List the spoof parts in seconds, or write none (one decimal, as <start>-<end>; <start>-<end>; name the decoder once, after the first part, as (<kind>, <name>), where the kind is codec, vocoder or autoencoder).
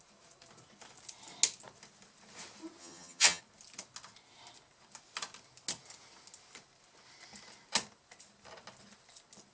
2.8-3.4 (vocoder, HiFi-GAN)